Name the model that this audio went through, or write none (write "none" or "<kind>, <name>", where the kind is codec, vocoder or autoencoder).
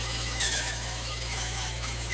autoencoder, DAC-VAE